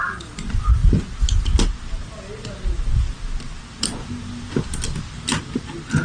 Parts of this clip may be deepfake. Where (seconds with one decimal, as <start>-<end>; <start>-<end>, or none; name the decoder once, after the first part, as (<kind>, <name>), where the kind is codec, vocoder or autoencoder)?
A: none